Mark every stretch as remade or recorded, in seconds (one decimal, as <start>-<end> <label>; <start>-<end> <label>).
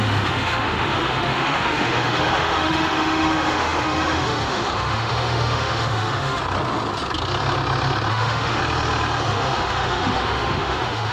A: 0.0-6.4 remade; 6.4-8.1 recorded; 8.1-8.6 remade; 8.6-9.3 recorded; 9.3-11.1 remade